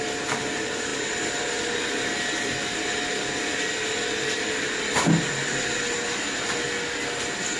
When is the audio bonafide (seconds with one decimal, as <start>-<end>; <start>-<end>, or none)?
0.0-7.6